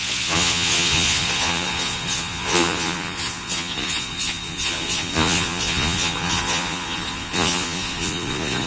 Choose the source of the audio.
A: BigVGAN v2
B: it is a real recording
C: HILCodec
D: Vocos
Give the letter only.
D